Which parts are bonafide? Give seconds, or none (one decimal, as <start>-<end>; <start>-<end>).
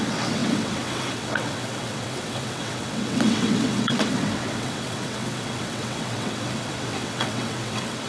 none